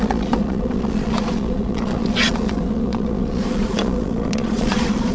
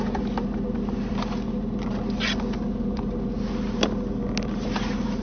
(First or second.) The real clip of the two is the second